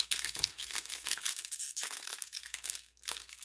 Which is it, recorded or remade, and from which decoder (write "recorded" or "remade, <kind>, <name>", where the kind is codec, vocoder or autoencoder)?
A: remade, codec, SNAC